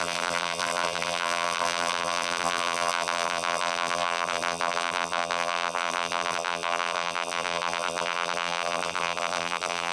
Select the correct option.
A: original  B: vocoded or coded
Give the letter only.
B